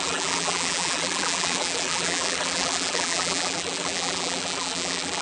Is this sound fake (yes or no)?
yes